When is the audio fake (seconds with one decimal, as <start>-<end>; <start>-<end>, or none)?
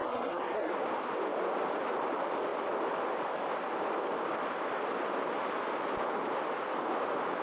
0.0-0.7